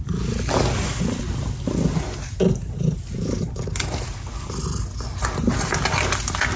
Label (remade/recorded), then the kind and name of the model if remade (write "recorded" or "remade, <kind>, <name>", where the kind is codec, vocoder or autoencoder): recorded